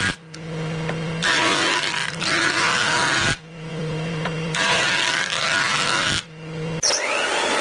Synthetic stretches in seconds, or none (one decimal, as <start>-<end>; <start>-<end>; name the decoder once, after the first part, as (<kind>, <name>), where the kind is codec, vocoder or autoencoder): 2.0-2.6 (vocoder, BigVGAN v2); 3.7-4.8